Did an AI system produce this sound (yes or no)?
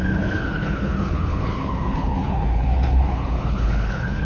yes